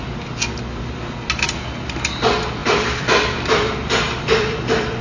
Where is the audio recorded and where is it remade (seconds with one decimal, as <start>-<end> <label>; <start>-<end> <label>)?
0.0-5.0 recorded